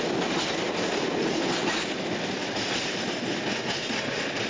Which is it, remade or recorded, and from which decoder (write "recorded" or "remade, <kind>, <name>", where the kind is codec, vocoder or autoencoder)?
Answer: recorded